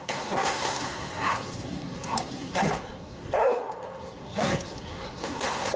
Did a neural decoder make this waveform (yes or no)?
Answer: yes